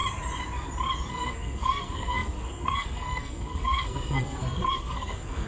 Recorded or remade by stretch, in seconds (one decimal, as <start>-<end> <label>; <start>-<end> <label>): 0.0-1.1 recorded; 1.1-5.5 remade